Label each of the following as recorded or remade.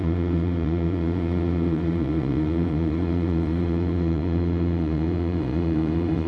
remade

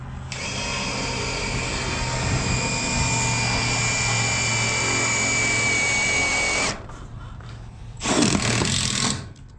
recorded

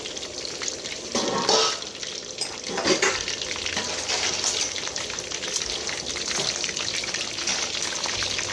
recorded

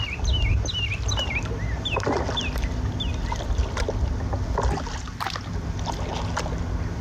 recorded